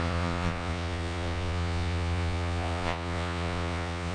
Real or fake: fake